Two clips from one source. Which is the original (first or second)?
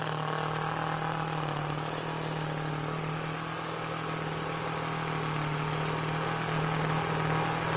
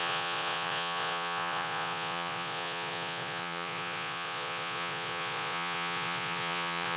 first